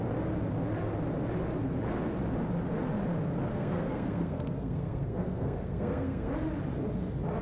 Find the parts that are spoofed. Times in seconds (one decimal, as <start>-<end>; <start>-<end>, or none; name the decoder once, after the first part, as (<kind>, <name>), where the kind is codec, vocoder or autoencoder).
3.5-6.3 (codec, SNAC)